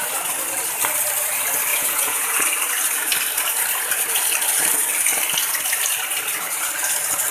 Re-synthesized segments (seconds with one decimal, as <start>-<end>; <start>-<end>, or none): 1.7-2.3